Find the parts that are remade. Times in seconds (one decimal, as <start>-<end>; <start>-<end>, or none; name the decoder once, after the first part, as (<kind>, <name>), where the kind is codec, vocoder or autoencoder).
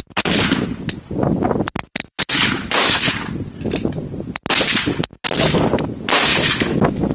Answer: 2.0-3.1 (autoencoder, DAC-VAE); 6.3-7.1